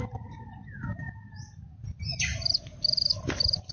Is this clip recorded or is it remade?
recorded